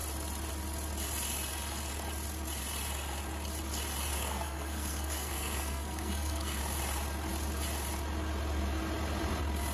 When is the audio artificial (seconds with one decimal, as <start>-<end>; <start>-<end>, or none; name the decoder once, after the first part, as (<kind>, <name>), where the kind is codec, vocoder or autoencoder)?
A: 4.1-6.6 (codec, SNAC)